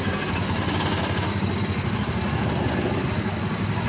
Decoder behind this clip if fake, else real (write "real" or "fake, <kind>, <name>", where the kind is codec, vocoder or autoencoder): real